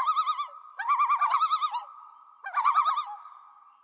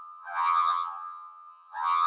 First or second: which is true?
first